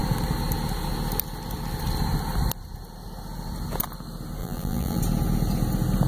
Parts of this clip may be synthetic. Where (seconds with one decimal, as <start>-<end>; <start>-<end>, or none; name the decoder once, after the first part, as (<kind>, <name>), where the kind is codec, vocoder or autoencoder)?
4.4-5.0 (vocoder, BigVGAN v2)